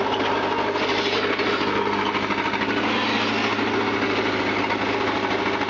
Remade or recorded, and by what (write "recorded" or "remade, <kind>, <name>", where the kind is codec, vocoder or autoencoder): recorded